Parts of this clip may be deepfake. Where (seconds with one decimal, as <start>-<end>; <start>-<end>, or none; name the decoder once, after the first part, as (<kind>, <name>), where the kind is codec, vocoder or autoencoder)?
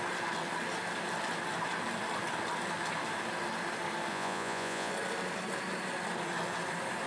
4.1-4.9 (vocoder, Vocos)